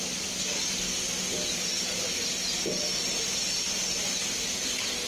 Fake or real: real